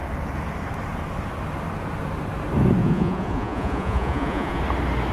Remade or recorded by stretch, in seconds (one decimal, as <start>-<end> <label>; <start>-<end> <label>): 0.0-2.8 recorded; 2.8-4.6 remade; 4.6-5.1 recorded